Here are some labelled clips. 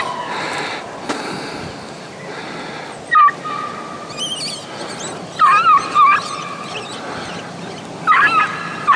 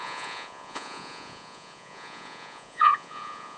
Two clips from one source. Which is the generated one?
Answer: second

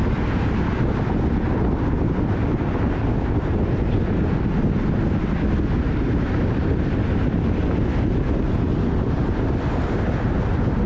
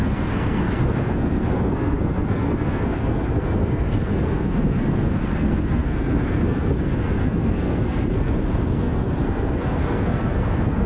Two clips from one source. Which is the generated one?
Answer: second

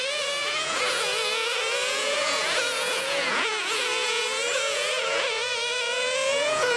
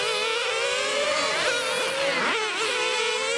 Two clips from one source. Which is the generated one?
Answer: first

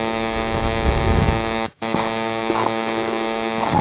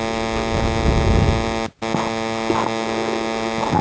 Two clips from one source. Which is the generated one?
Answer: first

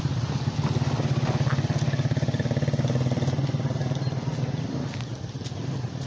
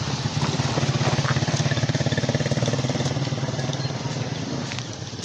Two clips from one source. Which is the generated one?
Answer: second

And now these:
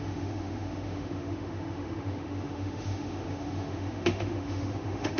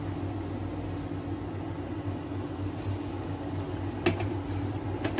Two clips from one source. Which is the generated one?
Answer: first